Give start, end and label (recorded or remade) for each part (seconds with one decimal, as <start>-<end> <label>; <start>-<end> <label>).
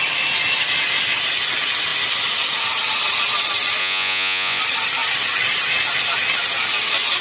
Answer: 0.0-3.8 recorded; 3.8-4.6 remade; 4.6-7.2 recorded